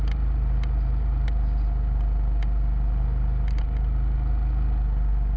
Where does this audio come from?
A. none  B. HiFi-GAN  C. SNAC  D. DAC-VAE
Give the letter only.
A